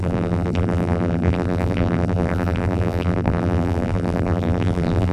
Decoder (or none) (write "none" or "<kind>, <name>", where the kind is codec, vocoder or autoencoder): vocoder, BigVGAN v2